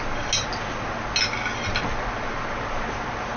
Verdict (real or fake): real